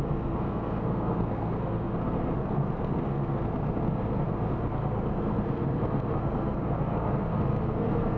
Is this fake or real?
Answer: fake